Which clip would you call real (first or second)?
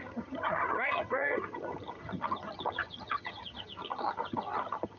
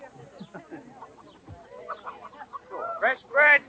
second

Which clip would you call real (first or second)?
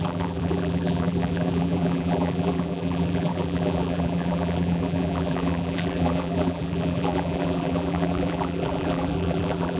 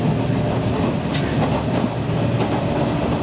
second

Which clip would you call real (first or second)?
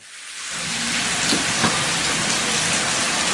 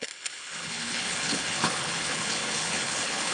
first